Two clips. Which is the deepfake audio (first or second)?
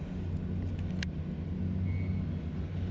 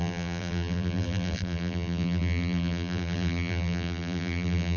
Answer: second